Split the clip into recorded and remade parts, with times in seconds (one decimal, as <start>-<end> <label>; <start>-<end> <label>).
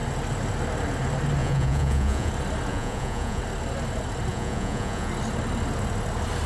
0.0-1.4 recorded; 1.4-2.3 remade; 2.3-2.7 recorded; 2.7-3.4 remade; 3.4-4.3 recorded; 4.3-5.1 remade; 5.1-6.5 recorded